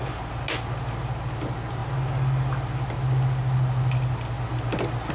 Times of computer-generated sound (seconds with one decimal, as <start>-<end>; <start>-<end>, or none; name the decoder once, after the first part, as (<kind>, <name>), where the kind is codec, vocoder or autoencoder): none